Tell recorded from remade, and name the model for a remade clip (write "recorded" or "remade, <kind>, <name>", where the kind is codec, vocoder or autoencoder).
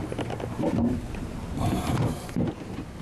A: remade, vocoder, BigVGAN v2